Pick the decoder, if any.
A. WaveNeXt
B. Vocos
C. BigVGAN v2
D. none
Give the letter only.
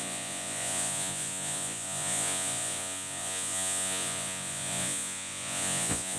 B